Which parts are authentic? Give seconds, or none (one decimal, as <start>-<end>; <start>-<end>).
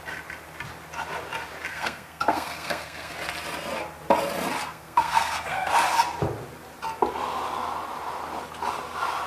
0.0-1.7; 3.1-4.6; 5.7-9.3